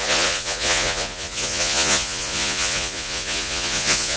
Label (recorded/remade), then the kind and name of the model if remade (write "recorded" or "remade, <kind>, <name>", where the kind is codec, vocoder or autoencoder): remade, vocoder, Vocos